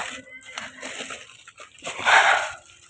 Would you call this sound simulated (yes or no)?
no